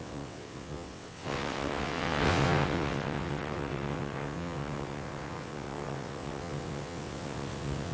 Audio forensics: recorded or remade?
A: remade